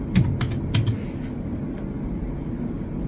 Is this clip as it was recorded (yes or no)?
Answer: yes